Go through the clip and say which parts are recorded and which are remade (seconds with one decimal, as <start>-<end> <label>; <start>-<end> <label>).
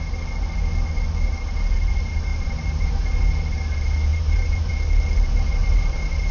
0.0-2.3 recorded; 2.3-3.2 remade; 3.2-4.1 recorded; 4.1-4.7 remade; 4.7-5.6 recorded; 5.6-6.3 remade